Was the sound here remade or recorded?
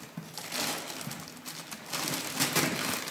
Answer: recorded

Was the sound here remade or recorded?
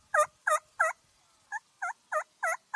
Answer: remade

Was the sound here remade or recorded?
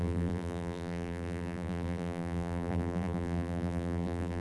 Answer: remade